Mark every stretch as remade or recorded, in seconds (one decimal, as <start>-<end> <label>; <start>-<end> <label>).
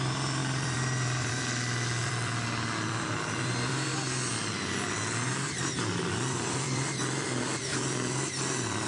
0.0-3.9 remade; 3.9-5.4 recorded; 5.4-8.9 remade